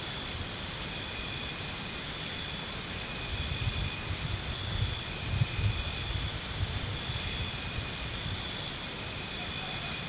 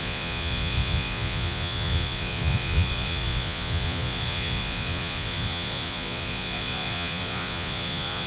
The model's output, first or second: second